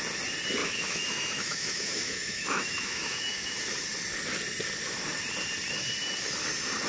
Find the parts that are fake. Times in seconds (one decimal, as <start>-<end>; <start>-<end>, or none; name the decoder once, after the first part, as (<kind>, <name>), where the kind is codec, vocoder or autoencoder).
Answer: 0.6-3.6 (autoencoder, DAC-VAE)